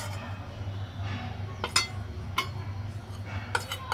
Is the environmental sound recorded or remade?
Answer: recorded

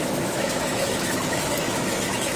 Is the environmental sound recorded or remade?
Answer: remade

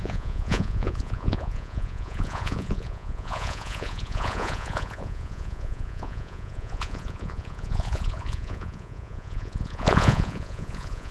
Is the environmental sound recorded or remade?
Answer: remade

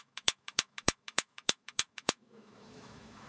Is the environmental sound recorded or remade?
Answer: remade